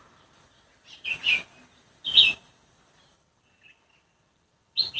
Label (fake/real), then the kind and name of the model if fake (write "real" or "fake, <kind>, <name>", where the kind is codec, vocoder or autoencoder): real